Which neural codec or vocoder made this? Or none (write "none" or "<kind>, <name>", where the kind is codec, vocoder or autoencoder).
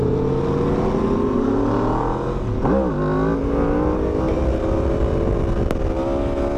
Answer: none